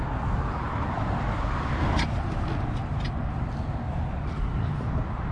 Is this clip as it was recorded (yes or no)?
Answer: yes